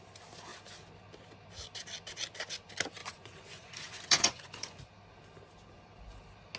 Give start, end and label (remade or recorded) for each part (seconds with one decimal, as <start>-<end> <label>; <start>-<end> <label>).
0.0-3.0 recorded; 3.0-4.8 remade; 4.8-6.6 recorded